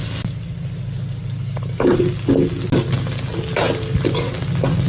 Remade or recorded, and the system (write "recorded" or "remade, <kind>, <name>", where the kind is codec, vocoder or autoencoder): recorded